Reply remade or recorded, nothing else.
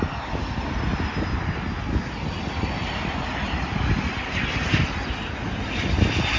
recorded